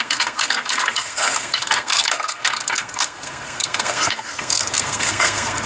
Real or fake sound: fake